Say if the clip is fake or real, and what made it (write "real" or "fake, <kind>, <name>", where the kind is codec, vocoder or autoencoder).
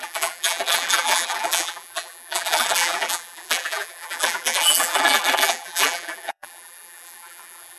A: fake, vocoder, BigVGAN v2